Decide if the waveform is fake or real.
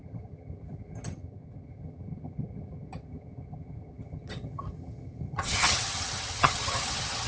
fake